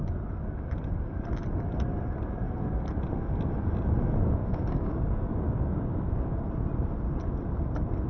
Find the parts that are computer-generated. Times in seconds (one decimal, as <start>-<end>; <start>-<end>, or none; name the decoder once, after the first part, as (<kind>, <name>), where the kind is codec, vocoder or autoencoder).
4.4-6.5 (codec, DAC)